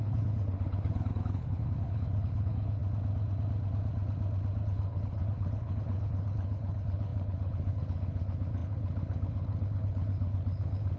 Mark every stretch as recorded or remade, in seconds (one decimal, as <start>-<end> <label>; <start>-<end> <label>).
0.0-2.8 remade; 2.8-4.6 recorded; 4.6-11.0 remade

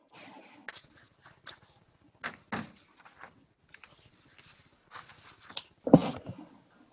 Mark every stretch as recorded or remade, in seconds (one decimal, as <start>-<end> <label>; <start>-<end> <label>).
0.0-6.9 recorded

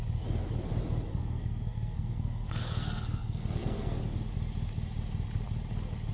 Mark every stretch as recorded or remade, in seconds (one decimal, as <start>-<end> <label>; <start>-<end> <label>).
0.0-1.1 recorded; 1.1-4.0 remade; 4.0-6.1 recorded

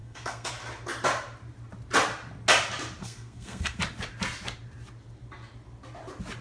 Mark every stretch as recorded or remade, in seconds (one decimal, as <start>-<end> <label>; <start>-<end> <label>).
0.0-0.5 remade; 0.5-3.0 recorded; 3.0-3.8 remade; 3.8-6.4 recorded